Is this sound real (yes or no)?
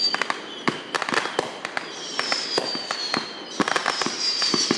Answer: no